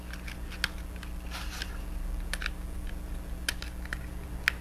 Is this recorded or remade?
recorded